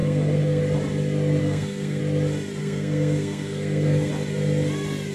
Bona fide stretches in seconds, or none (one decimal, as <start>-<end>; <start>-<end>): 0.6-1.4; 2.0-2.6; 4.1-5.1